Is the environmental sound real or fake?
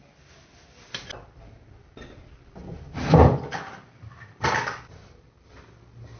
real